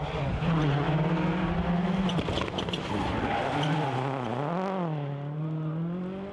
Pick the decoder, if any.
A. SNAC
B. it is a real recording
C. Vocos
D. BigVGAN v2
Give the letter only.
B